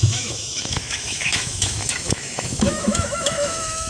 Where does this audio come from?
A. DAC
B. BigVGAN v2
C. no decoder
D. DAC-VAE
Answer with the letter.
D